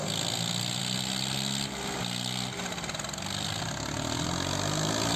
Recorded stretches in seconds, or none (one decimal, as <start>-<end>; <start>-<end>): 0.0-5.2